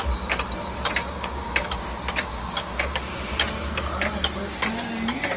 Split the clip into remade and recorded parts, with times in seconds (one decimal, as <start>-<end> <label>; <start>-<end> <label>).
0.0-1.0 recorded; 1.0-1.8 remade; 1.8-2.3 recorded; 2.3-3.0 remade; 3.0-5.4 recorded